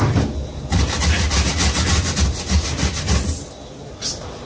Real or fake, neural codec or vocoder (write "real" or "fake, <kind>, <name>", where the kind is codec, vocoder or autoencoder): real